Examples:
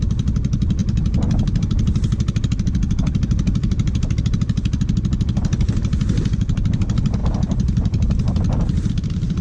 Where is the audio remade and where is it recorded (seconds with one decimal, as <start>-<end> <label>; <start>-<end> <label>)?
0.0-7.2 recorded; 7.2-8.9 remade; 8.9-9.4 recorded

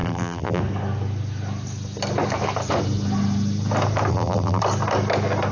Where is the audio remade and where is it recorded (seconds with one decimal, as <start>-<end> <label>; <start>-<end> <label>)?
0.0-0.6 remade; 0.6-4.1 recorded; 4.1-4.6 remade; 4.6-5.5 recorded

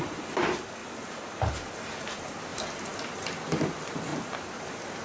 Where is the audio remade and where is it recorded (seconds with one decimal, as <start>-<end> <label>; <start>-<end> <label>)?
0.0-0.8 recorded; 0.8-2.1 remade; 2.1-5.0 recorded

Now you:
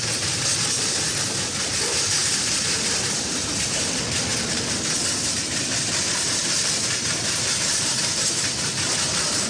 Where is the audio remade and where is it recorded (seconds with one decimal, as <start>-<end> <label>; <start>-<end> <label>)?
0.0-2.2 recorded; 2.2-3.9 remade; 3.9-9.5 recorded

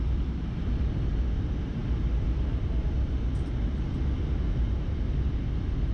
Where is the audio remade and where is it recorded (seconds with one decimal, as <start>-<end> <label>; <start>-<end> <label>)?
0.0-5.9 recorded

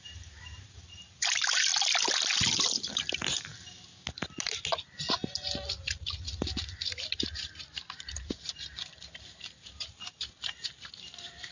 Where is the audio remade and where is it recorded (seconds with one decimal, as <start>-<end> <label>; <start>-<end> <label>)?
0.0-1.7 remade; 1.7-2.6 recorded; 2.6-3.5 remade; 3.5-6.6 recorded; 6.6-11.5 remade